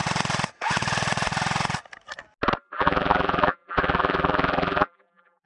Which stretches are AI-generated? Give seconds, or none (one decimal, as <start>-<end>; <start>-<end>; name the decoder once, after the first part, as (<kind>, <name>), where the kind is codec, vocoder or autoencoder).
2.7-5.5 (vocoder, BigVGAN v2)